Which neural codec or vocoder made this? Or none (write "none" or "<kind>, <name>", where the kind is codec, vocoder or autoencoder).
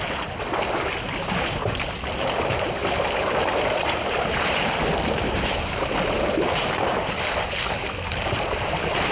none